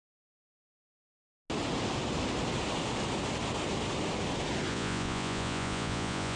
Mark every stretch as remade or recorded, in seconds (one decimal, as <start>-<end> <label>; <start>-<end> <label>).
0.0-4.7 recorded; 4.7-6.4 remade